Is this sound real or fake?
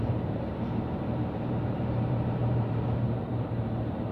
fake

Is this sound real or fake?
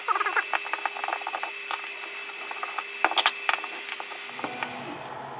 real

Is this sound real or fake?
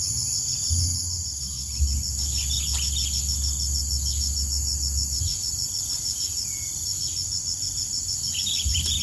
real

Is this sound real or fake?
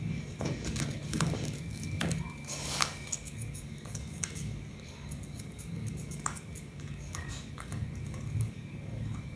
fake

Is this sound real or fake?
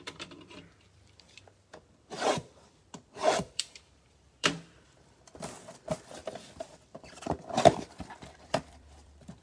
fake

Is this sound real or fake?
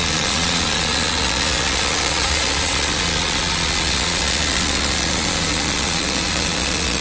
fake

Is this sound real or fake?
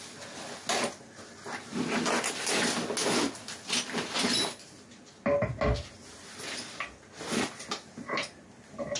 real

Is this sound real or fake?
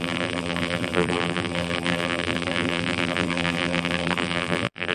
fake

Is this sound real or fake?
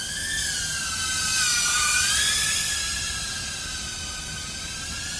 real